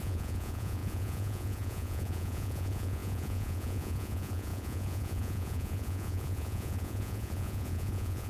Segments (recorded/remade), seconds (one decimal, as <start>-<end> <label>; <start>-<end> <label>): 0.0-8.3 remade